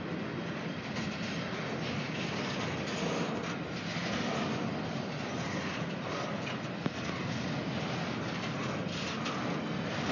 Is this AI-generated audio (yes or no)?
no